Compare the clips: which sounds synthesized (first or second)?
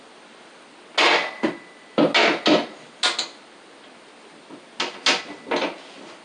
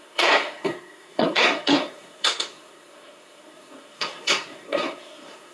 second